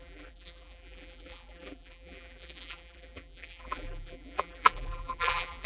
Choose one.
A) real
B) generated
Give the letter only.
B